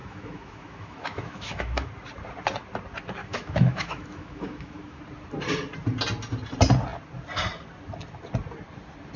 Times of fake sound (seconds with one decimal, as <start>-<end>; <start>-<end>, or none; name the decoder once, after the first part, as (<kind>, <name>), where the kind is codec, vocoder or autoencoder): 0.0-1.9 (autoencoder, DAC-VAE); 3.2-5.0